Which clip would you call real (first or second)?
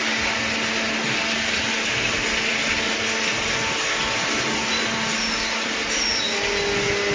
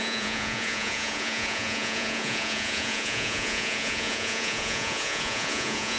first